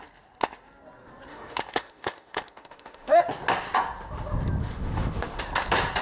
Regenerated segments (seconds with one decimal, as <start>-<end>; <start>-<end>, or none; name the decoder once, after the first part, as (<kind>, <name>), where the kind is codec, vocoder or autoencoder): 1.3-3.2 (autoencoder, DAC-VAE); 4.6-5.4